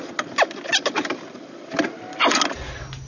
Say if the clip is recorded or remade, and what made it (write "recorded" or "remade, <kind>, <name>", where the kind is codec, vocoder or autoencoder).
recorded